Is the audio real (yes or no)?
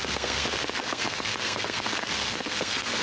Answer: no